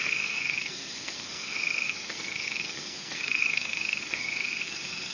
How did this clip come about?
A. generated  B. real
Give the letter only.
A